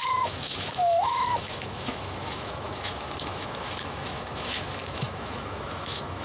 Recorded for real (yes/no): no